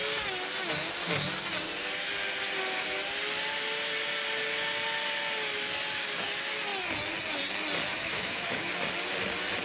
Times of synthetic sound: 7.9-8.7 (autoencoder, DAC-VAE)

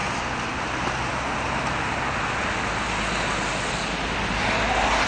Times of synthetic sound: none

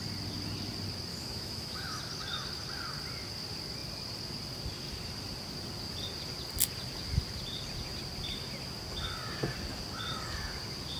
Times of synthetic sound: 1.1-2.0 (autoencoder, DAC-VAE)

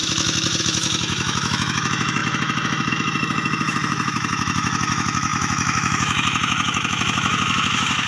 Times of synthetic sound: 0.0-8.1 (autoencoder, DAC-VAE)

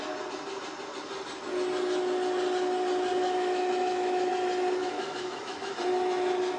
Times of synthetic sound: 3.1-4.3 (autoencoder, DAC-VAE); 4.8-5.7